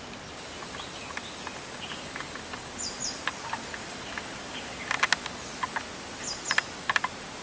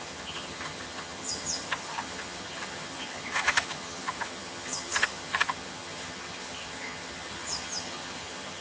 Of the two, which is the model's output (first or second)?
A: second